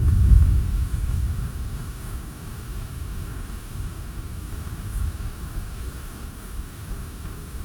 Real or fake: fake